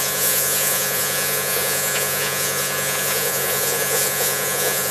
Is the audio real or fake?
fake